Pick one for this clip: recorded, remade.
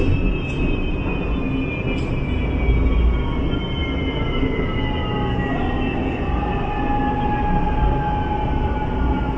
recorded